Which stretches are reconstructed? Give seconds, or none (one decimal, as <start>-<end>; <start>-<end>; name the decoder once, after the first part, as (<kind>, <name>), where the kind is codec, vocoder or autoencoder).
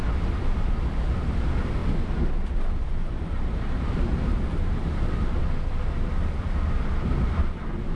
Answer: 4.3-5.4 (vocoder, BigVGAN v2)